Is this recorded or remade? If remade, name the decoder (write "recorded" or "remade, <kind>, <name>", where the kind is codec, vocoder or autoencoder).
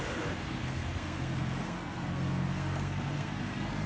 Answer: remade, codec, SNAC